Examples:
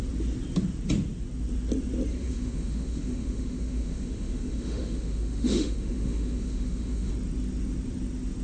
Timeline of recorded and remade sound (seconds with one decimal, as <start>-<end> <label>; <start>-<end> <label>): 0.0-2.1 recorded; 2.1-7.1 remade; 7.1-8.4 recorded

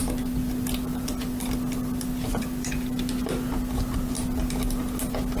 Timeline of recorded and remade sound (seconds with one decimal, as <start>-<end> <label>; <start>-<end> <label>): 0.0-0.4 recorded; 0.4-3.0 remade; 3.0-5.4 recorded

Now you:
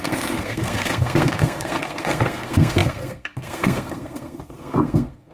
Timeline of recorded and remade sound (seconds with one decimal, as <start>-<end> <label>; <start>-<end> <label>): 0.0-5.3 remade

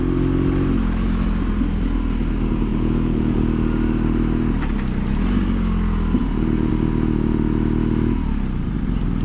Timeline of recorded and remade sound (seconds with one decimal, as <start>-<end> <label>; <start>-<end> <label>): 0.0-2.7 recorded; 2.7-3.4 remade; 3.4-6.2 recorded; 6.2-6.7 remade; 6.7-9.2 recorded

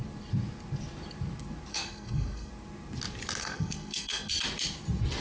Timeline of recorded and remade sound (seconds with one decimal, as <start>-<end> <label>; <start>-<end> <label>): 0.0-1.7 recorded; 1.7-2.5 remade; 2.5-3.4 recorded; 3.4-4.3 remade; 4.3-5.2 recorded

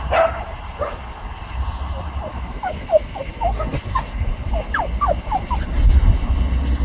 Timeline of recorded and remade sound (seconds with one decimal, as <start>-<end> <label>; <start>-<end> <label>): 0.0-2.3 recorded; 2.3-3.2 remade; 3.2-6.8 recorded